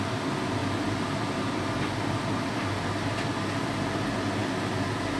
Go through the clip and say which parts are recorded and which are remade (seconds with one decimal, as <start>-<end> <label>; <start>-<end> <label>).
0.0-5.2 recorded